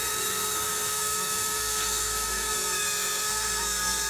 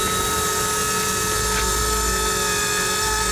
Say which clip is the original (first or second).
second